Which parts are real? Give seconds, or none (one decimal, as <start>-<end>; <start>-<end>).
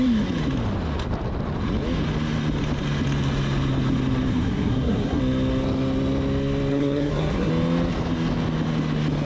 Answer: 0.0-4.3; 5.2-6.7; 7.5-9.2